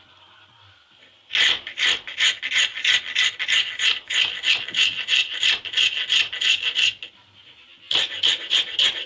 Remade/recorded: recorded